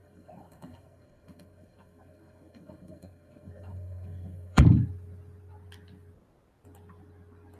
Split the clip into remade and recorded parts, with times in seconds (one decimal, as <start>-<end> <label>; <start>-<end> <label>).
0.0-4.6 remade; 4.6-7.6 recorded